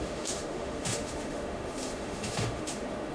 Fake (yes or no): yes